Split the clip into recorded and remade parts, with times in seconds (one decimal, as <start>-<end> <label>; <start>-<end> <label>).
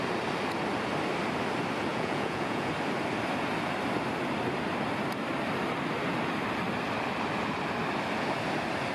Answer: 0.0-1.9 recorded; 1.9-2.7 remade; 2.7-8.9 recorded